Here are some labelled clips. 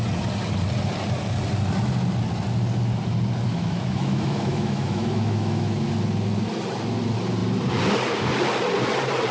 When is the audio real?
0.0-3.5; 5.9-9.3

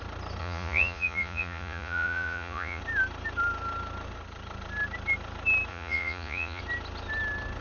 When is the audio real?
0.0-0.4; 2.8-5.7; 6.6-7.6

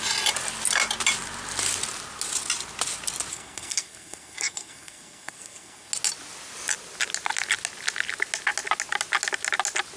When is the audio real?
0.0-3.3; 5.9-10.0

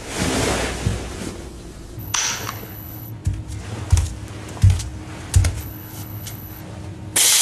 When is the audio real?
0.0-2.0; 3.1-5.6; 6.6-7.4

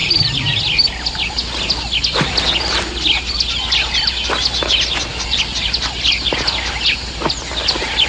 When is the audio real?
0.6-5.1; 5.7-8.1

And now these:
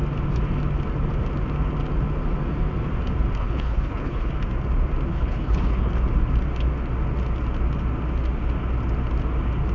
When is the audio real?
0.0-3.4; 4.3-5.1; 5.9-9.7